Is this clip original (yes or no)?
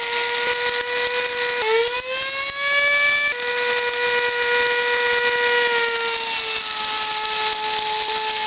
yes